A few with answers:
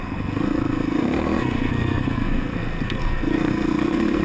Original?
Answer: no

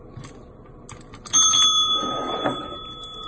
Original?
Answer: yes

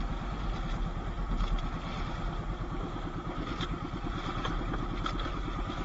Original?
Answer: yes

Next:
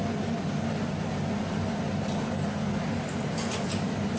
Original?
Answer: yes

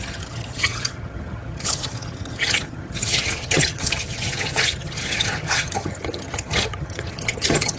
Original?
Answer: no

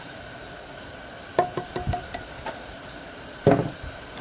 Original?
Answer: yes